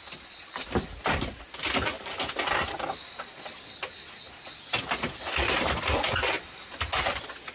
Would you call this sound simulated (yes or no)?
no